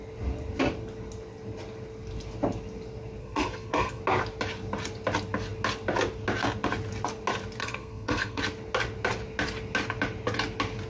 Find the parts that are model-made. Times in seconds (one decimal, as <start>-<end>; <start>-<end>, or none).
3.2-4.0; 7.6-8.4